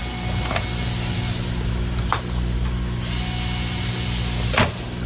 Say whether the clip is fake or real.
real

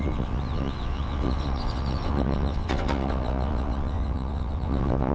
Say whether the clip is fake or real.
fake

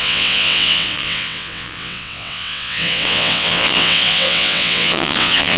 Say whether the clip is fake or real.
fake